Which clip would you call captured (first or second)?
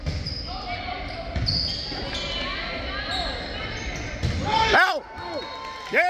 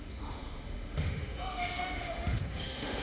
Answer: first